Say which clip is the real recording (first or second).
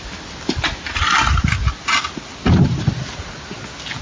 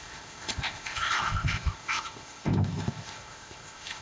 first